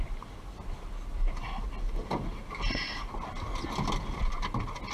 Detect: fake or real real